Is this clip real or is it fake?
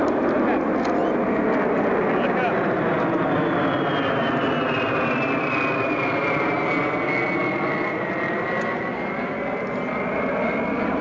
real